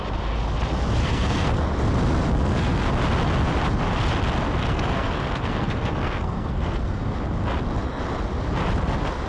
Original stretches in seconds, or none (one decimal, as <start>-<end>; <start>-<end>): 0.0-1.0; 1.6-2.3; 2.9-4.6; 7.0-9.3